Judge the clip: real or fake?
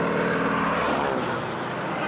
real